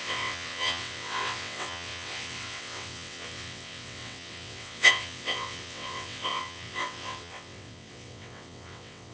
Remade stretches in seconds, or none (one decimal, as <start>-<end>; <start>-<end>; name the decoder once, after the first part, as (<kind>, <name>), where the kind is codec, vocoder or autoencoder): 0.0-9.1 (vocoder, WaveNeXt)